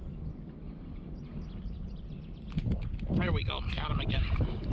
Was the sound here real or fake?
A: real